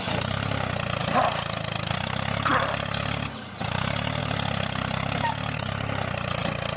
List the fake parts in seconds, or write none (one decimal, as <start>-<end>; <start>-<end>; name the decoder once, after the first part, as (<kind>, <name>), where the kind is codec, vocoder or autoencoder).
none